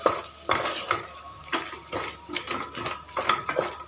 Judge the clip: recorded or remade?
recorded